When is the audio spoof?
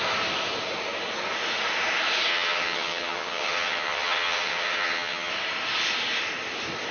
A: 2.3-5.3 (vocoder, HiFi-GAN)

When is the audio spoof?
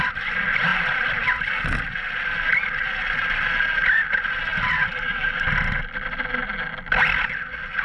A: none